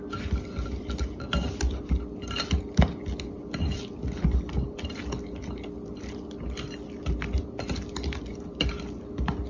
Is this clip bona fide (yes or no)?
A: yes